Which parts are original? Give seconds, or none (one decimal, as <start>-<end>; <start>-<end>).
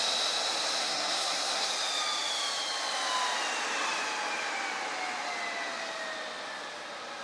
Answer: 0.0-0.8; 1.7-7.2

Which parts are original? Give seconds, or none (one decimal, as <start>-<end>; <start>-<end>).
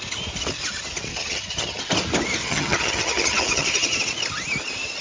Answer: 0.0-1.1; 1.8-2.4; 4.0-5.0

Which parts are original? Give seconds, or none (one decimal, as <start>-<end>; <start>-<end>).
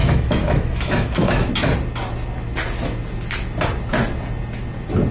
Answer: 1.5-5.1